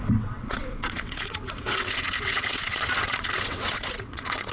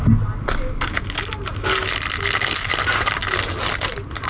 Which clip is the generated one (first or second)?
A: first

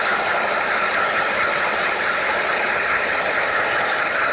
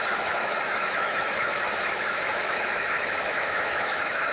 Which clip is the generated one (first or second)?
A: second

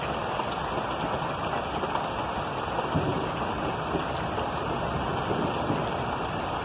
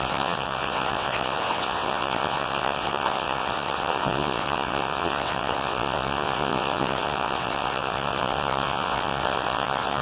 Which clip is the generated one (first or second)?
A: second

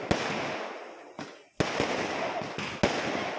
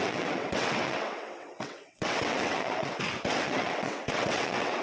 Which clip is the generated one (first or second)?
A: second